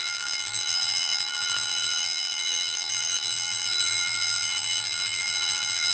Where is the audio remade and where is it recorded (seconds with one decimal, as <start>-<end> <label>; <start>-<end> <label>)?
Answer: 0.0-5.9 remade